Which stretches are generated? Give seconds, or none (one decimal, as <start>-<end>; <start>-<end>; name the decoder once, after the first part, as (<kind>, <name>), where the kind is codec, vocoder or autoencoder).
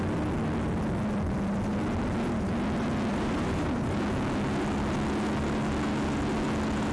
3.1-4.0 (vocoder, BigVGAN v2)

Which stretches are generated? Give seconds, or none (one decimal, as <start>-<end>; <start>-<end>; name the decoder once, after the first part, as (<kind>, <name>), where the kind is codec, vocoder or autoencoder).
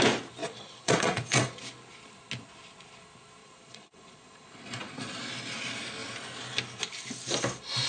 0.4-1.6 (vocoder, Vocos); 3.4-5.2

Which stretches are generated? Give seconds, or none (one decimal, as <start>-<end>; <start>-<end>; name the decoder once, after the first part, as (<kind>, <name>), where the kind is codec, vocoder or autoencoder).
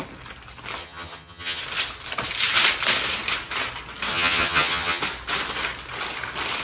0.8-1.6 (vocoder, HiFi-GAN); 4.1-5.0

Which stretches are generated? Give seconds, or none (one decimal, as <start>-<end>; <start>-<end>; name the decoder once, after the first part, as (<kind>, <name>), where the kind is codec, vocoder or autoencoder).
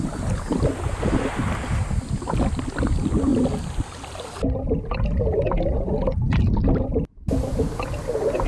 none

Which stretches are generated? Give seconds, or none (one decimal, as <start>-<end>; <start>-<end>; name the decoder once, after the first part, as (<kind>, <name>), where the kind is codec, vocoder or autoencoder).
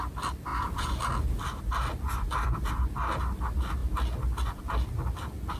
none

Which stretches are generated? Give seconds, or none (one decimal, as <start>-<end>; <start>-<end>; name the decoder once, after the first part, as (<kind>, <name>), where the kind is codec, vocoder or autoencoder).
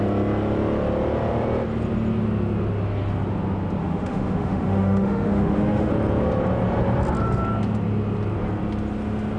3.8-5.9 (autoencoder, DAC-VAE)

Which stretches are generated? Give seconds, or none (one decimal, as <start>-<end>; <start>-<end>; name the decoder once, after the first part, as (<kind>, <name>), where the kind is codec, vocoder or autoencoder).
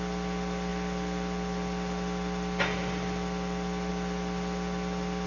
none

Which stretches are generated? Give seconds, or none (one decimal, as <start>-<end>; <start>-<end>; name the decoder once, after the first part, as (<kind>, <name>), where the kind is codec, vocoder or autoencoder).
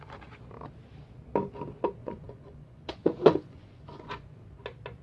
2.0-4.6 (vocoder, Vocos)